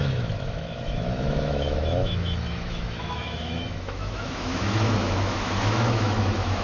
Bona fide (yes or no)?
no